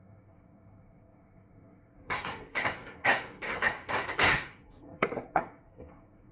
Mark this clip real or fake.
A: fake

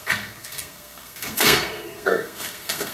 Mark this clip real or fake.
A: fake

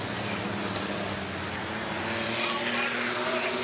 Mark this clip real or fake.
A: real